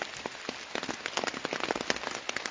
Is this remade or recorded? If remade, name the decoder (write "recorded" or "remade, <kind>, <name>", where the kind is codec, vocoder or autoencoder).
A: recorded